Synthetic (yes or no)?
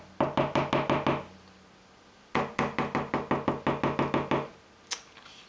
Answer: no